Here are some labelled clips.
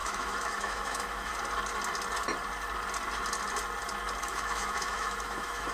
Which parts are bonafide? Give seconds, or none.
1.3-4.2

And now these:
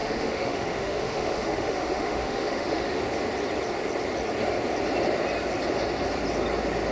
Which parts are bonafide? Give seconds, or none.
3.0-6.9

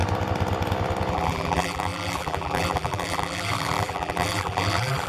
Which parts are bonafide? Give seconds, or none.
0.0-1.1

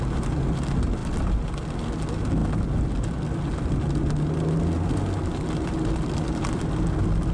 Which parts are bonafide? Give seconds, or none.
0.0-7.3

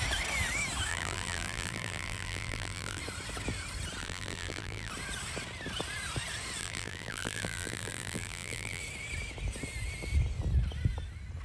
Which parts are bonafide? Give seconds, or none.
0.0-0.9; 3.0-4.0; 4.9-6.6; 8.8-11.4

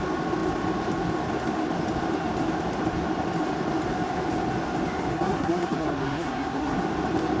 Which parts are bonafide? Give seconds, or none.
0.0-5.1; 6.8-7.4